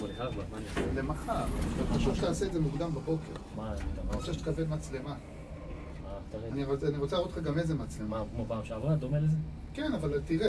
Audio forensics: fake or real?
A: real